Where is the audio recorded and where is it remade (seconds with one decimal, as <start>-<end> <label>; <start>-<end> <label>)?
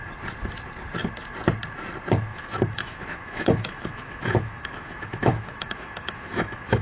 0.0-2.3 recorded; 2.3-6.8 remade